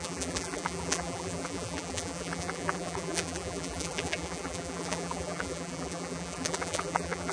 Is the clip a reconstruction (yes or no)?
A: yes